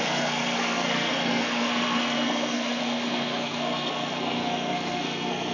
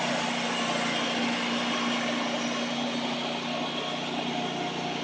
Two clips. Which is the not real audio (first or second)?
first